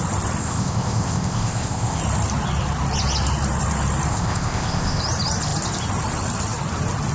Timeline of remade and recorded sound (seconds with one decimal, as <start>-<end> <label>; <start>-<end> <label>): 0.0-0.4 recorded; 0.4-2.0 remade; 2.0-4.1 recorded; 4.1-5.0 remade; 5.0-7.1 recorded